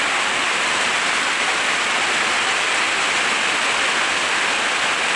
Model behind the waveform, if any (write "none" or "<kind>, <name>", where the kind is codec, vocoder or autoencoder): none